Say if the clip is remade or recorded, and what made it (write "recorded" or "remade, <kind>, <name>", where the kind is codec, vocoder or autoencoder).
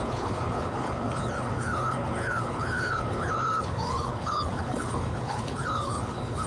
remade, codec, HILCodec